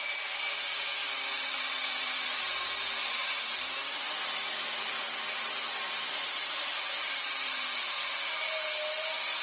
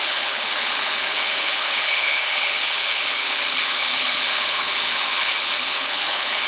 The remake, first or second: second